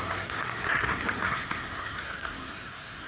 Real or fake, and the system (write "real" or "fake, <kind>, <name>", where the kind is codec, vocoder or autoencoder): fake, codec, SNAC